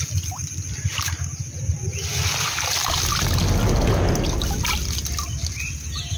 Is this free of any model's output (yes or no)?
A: yes